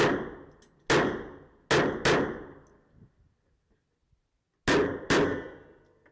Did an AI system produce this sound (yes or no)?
no